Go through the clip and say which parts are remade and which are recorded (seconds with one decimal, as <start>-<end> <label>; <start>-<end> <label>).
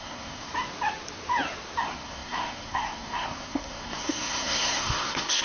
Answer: 0.0-0.5 remade; 0.5-1.8 recorded; 1.8-5.4 remade